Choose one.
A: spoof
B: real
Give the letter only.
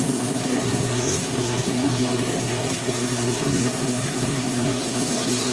A